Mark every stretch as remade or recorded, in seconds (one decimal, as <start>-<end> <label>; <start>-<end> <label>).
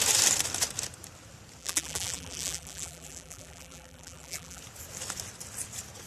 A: 0.0-1.6 recorded; 1.6-4.6 remade; 4.6-6.1 recorded